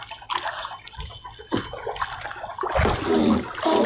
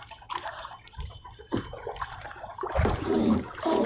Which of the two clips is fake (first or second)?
second